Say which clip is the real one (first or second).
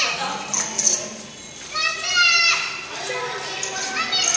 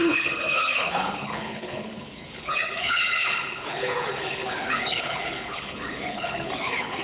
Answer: first